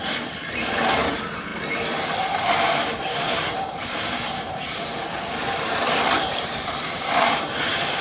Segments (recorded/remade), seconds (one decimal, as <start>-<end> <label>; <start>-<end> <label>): 0.0-1.5 remade; 1.5-2.2 recorded; 2.2-8.0 remade